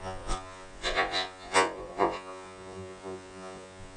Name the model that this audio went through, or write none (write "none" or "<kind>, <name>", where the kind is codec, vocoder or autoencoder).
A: vocoder, Vocos